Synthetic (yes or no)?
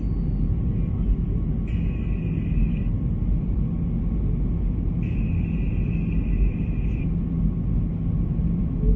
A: no